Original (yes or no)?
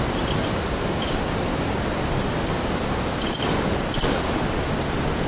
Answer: yes